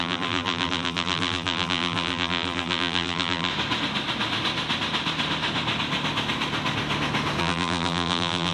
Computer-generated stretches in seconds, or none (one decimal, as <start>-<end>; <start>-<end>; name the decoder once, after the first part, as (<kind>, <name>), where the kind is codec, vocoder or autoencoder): 0.0-3.5 (vocoder, BigVGAN v2); 7.4-8.5